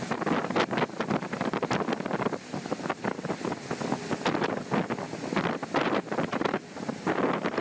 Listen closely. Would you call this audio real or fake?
real